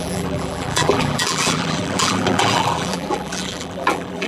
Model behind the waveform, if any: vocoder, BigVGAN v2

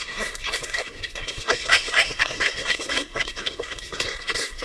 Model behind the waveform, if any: codec, SNAC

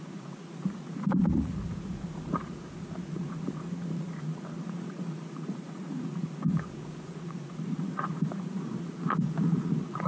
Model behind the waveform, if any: vocoder, Vocos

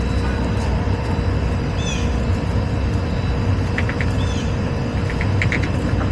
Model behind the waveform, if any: none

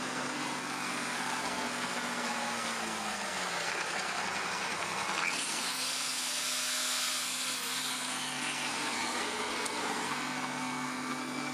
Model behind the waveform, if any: codec, SNAC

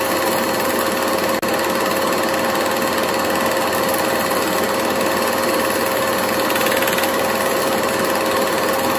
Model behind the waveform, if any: none